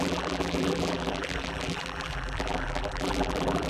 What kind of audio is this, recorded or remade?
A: remade